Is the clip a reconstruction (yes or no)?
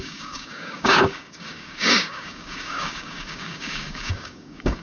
yes